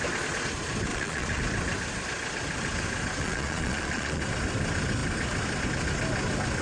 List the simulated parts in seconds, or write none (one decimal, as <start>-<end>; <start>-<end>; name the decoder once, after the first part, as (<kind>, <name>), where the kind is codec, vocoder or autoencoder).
0.9-1.4 (vocoder, Vocos); 3.2-4.2